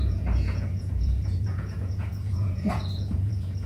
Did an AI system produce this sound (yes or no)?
yes